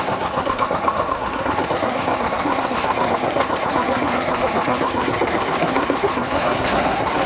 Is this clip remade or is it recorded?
remade